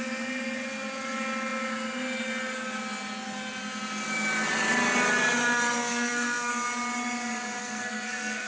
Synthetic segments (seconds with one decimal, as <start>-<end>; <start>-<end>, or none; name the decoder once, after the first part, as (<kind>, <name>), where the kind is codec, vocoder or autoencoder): 5.8-6.5 (codec, SNAC); 7.6-8.5